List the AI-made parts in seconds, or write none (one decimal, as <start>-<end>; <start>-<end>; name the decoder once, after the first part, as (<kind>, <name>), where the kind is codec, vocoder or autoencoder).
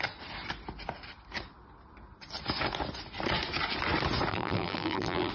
4.3-5.3 (vocoder, BigVGAN v2)